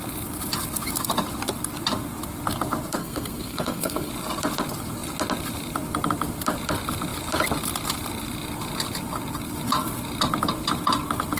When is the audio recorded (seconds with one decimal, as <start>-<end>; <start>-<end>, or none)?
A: 0.0-3.0; 4.1-11.4